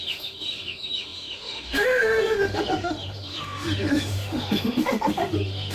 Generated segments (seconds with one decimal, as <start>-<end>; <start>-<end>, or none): 0.0-5.7